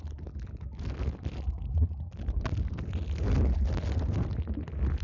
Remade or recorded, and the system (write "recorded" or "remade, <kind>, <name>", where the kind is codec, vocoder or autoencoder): recorded